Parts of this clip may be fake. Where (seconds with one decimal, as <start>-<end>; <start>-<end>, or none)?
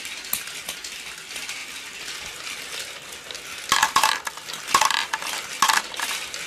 none